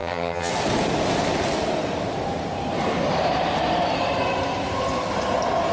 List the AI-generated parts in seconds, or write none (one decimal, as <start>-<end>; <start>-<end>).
0.0-0.5